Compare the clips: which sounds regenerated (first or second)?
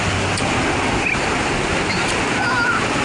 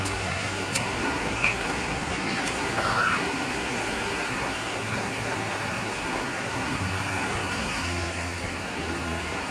second